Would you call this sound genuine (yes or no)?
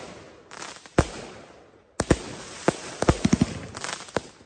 yes